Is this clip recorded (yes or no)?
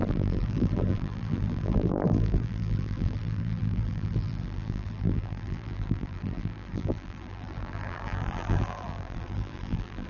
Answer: no